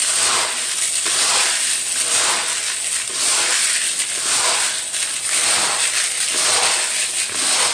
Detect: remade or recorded recorded